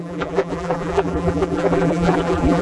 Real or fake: fake